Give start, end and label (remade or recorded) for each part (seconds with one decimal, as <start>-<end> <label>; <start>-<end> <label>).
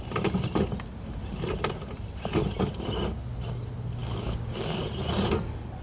0.0-4.0 recorded; 4.0-4.8 remade; 4.8-5.8 recorded